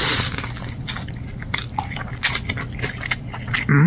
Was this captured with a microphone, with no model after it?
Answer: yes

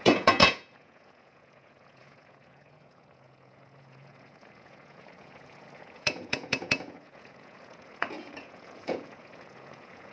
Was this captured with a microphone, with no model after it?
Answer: no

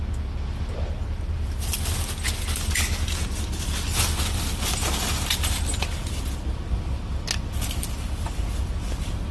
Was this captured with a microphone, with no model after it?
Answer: yes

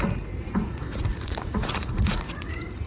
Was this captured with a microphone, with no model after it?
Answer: no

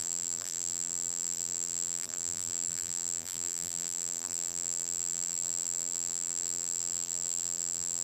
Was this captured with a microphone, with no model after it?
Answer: no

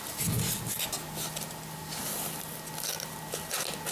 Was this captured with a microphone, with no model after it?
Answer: yes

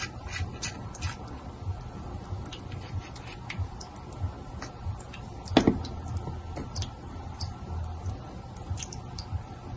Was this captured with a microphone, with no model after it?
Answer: yes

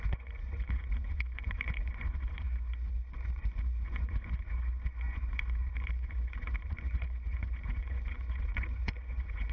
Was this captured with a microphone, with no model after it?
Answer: no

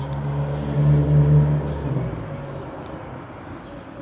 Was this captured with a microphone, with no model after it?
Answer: yes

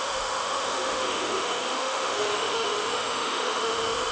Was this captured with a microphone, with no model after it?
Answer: no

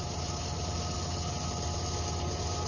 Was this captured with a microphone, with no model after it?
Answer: yes